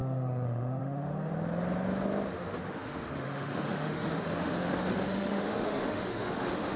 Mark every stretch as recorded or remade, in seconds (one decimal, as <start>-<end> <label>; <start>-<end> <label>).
0.0-1.3 remade; 1.3-2.3 recorded; 2.3-6.8 remade